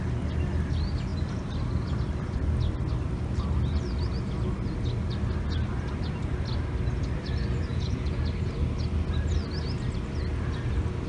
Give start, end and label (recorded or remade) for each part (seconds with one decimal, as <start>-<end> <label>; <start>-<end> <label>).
0.0-7.7 recorded; 7.7-8.2 remade; 8.2-11.1 recorded